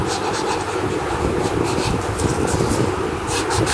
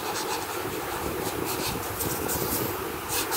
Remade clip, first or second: second